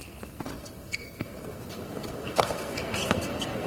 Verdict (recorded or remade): remade